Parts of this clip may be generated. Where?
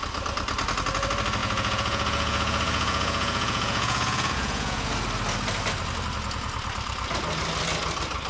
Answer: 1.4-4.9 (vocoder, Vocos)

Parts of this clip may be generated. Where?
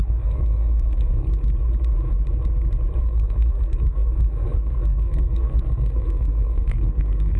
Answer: 0.0-1.3 (codec, SNAC); 3.0-7.4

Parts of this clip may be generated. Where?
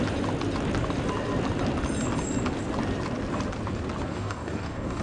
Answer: 4.1-5.0 (codec, DAC)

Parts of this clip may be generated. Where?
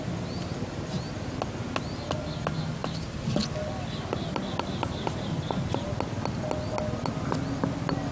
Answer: none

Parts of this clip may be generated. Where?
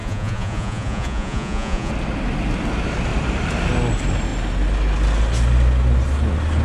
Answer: 0.0-1.9 (vocoder, Vocos)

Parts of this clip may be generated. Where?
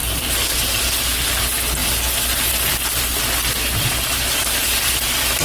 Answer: 0.0-0.8 (vocoder, BigVGAN v2)